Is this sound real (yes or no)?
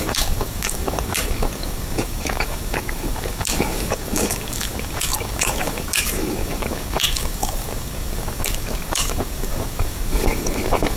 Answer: no